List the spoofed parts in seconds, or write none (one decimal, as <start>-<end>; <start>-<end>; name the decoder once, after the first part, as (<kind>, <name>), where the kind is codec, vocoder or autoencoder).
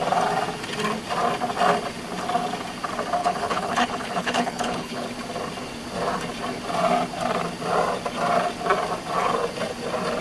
3.2-5.1 (codec, HILCodec)